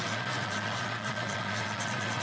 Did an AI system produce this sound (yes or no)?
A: yes